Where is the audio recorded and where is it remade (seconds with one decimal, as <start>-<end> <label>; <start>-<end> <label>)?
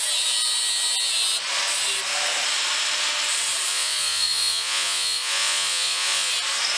0.0-3.7 recorded; 3.7-6.3 remade; 6.3-6.8 recorded